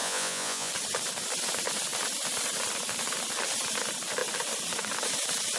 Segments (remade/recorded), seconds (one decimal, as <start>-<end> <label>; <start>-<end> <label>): 0.0-0.7 remade; 0.7-5.6 recorded